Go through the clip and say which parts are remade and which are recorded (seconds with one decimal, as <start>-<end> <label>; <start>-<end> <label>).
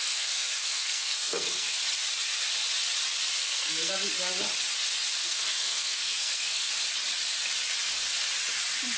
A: 0.0-1.8 remade; 1.8-3.4 recorded; 3.4-3.9 remade; 3.9-5.2 recorded; 5.2-6.7 remade; 6.7-9.0 recorded